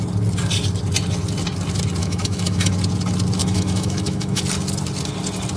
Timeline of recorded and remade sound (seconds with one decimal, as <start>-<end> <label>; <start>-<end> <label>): 0.0-2.0 recorded; 2.0-2.7 remade; 2.7-3.4 recorded; 3.4-4.4 remade; 4.4-5.6 recorded